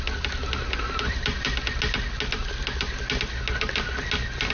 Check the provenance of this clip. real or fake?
real